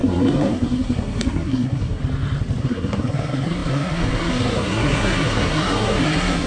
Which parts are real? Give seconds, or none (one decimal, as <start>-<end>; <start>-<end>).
2.0-2.6